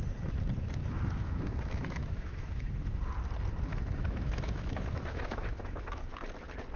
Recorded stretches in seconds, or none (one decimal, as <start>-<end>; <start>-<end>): 0.0-0.8; 2.9-3.7; 6.2-6.8